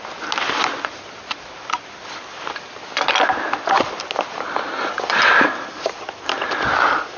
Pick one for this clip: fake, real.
real